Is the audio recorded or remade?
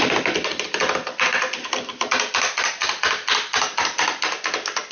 remade